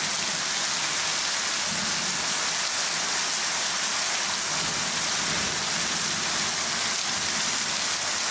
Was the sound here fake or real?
real